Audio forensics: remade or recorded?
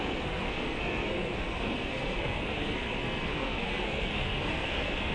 remade